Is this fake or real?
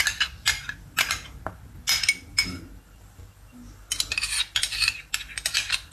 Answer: real